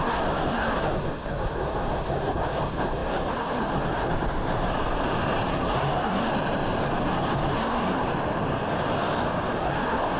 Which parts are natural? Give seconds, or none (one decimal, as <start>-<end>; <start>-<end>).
4.1-5.5; 6.3-7.0; 8.1-9.6